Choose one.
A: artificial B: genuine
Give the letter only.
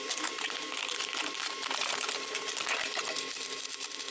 B